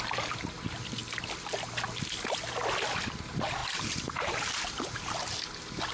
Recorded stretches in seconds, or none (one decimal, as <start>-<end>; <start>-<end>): 0.0-3.6; 4.4-5.9